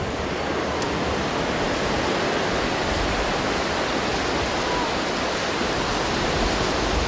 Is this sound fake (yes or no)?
no